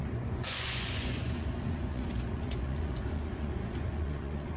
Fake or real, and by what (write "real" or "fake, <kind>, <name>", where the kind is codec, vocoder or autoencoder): fake, vocoder, Vocos